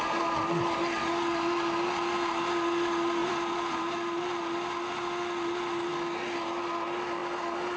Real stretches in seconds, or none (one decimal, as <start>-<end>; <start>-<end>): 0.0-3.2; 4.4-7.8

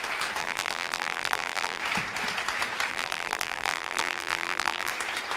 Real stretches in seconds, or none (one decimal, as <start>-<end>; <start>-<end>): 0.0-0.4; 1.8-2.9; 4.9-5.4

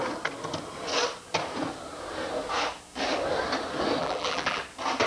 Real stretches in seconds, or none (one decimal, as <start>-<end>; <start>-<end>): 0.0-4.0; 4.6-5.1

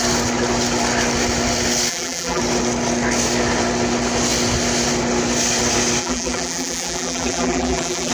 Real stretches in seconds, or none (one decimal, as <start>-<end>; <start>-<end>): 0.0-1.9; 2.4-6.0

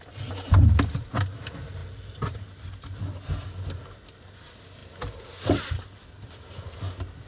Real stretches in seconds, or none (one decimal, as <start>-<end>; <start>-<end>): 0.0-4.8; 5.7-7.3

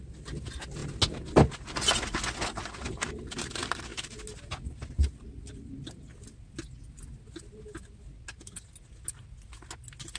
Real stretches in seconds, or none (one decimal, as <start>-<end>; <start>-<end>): 0.0-10.2